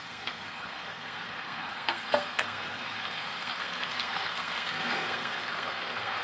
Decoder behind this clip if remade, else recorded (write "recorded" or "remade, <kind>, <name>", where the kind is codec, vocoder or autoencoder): remade, codec, SNAC